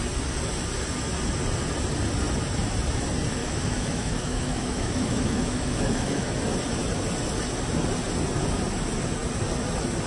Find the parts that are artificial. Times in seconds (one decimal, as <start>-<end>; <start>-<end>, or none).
3.4-6.3